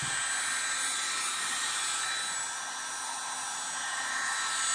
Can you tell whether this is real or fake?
real